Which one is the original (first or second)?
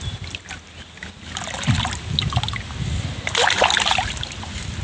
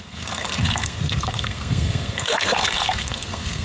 first